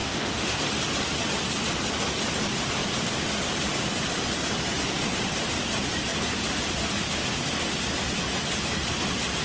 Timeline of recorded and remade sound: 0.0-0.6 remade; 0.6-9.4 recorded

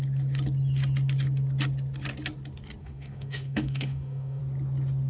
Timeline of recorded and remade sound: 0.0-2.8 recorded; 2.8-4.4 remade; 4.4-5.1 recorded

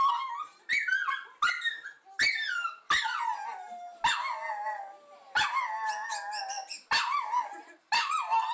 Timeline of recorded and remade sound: 0.0-8.5 recorded